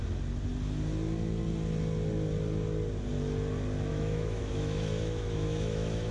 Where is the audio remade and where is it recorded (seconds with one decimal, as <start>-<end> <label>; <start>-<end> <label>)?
0.0-3.9 recorded; 3.9-6.1 remade